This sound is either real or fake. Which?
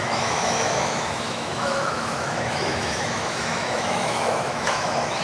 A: fake